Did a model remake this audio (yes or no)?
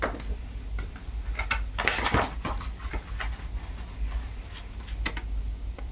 no